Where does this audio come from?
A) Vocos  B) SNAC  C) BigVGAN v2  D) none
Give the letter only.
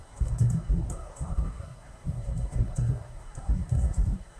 B